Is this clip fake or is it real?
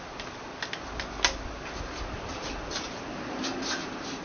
real